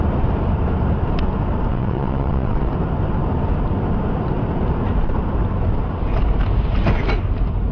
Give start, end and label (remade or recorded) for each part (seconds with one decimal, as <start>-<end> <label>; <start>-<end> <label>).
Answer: 0.0-1.7 recorded; 1.7-2.7 remade; 2.7-7.7 recorded